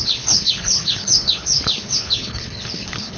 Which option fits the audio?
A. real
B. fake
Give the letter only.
B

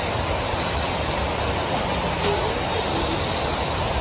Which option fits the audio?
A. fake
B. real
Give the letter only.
B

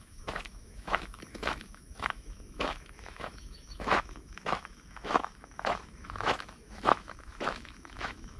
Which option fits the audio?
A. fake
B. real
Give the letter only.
A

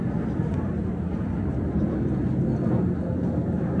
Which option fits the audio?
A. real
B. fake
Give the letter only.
A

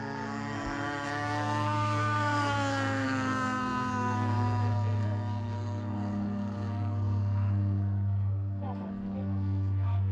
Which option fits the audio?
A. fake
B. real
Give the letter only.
A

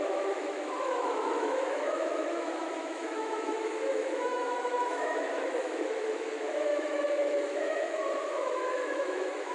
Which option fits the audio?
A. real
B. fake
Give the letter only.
B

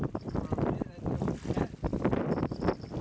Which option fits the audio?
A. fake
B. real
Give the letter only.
B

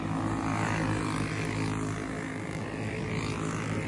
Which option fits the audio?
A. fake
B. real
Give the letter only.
B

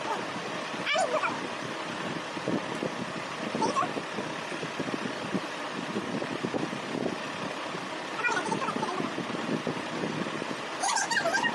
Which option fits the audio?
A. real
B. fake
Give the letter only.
A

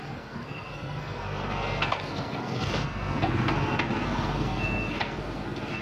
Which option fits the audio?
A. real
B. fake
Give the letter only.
B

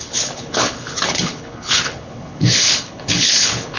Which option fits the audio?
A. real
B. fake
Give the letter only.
B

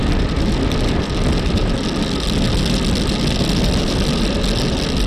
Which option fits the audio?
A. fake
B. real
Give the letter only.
B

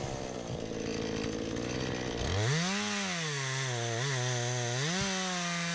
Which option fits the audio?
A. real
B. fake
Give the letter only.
A